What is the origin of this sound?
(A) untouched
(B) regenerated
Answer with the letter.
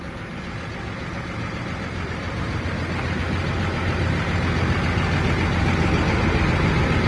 A